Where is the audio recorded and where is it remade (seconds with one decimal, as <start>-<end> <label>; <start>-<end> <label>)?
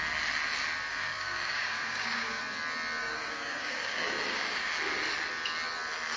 0.0-0.9 recorded; 0.9-2.4 remade; 2.4-3.0 recorded; 3.0-4.7 remade; 4.7-6.2 recorded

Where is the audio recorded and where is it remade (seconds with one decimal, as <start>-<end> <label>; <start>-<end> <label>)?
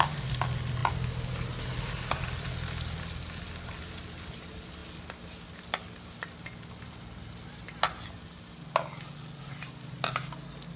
0.0-10.8 recorded